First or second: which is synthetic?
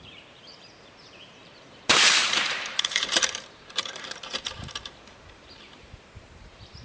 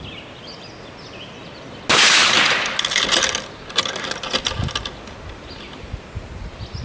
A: first